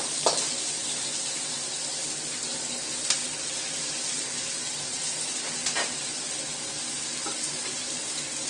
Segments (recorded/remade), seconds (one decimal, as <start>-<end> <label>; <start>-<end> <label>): 0.0-8.5 recorded